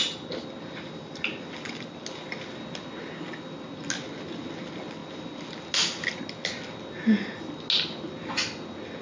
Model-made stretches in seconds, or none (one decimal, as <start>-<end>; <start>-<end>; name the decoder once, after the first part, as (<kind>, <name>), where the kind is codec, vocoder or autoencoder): none